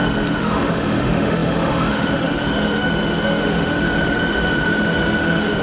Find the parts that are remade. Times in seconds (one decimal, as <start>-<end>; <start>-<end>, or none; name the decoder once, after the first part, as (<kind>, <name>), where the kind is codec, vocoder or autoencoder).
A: 0.0-5.6 (autoencoder, DAC-VAE)